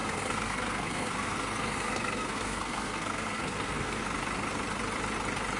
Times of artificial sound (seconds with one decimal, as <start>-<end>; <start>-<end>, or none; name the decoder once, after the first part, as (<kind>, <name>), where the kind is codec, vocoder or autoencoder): 0.0-4.0 (codec, SNAC)